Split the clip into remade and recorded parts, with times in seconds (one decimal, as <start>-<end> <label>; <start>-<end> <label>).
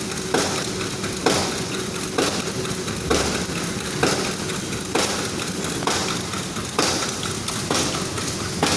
0.0-1.4 recorded; 1.4-1.9 remade; 1.9-8.8 recorded